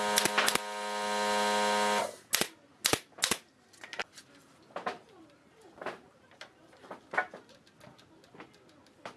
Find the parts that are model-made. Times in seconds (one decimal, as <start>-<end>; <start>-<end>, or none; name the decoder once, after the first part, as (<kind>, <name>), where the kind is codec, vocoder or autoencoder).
5.0-7.0 (vocoder, BigVGAN v2)